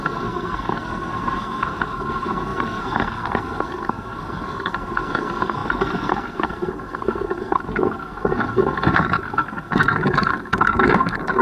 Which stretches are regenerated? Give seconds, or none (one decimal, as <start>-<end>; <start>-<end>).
0.0-11.4